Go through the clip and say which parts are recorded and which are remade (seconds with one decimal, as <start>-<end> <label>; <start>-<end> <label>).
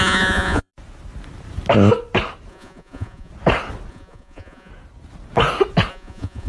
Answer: 0.0-0.7 remade; 0.7-2.5 recorded; 2.5-3.3 remade; 3.3-3.9 recorded; 3.9-4.7 remade; 4.7-5.9 recorded; 5.9-6.5 remade